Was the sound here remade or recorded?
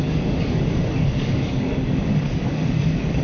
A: remade